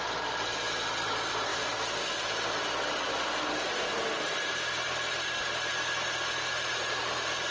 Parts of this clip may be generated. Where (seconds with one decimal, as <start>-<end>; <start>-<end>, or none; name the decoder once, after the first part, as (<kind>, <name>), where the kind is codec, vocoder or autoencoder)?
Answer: none

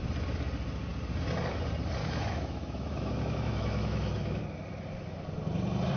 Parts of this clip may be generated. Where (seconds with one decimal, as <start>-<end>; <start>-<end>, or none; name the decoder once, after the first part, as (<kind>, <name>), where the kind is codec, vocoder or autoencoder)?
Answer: 2.0-4.4 (autoencoder, DAC-VAE)

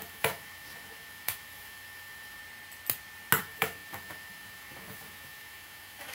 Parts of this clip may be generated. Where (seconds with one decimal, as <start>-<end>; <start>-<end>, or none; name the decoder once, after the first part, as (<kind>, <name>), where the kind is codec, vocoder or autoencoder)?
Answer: 0.0-2.4 (autoencoder, DAC-VAE); 3.4-6.1

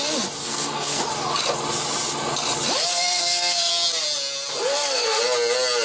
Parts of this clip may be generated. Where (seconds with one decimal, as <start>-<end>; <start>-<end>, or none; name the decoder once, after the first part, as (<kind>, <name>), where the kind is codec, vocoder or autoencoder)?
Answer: 0.4-1.0 (codec, SNAC); 2.9-3.7; 4.7-5.2